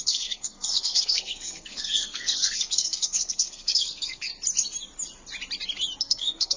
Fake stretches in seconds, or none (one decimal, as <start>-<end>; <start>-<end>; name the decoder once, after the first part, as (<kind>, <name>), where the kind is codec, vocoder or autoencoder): 0.0-4.3 (codec, SNAC); 6.0-6.6